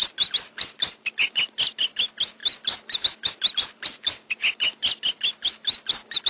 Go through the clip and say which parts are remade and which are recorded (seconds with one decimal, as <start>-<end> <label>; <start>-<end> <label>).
0.0-6.3 recorded